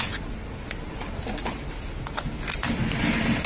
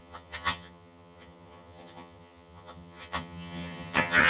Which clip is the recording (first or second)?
first